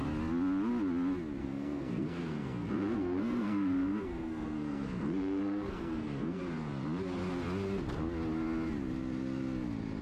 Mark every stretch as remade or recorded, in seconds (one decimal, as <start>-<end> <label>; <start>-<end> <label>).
0.0-1.4 recorded; 1.4-6.4 remade; 6.4-10.0 recorded